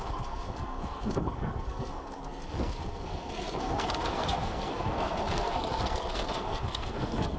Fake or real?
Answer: fake